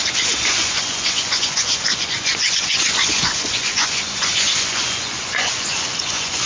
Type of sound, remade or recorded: remade